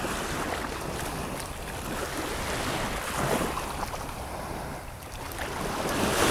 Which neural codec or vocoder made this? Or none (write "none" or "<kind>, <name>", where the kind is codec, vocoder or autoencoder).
none